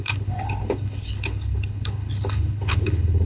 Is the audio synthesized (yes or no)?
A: yes